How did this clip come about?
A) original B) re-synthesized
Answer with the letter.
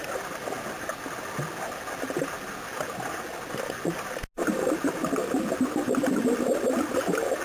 A